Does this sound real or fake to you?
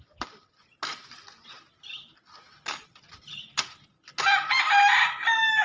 real